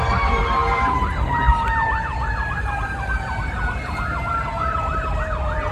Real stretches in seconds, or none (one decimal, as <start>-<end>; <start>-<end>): 4.5-5.2